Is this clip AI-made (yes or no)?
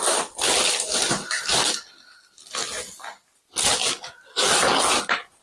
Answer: no